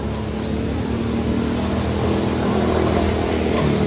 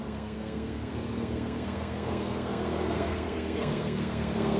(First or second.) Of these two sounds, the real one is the first